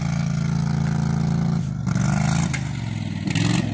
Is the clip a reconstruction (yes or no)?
no